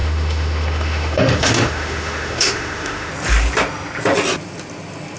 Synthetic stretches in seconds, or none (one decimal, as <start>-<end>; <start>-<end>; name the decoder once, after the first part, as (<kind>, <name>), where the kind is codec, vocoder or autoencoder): 0.0-3.1 (autoencoder, DAC-VAE)